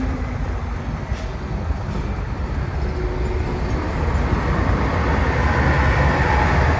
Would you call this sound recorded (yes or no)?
yes